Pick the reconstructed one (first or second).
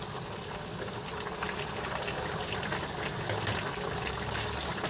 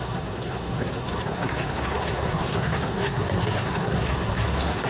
second